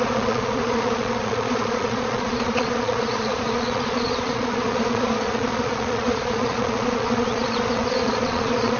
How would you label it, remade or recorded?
remade